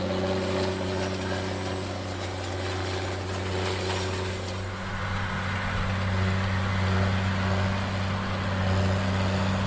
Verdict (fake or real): real